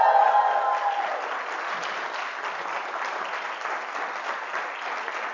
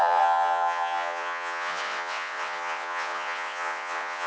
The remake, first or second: second